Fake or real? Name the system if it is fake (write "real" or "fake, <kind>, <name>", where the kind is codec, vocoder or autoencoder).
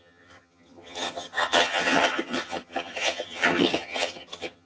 fake, vocoder, HiFi-GAN